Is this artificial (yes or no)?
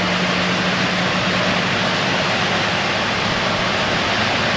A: no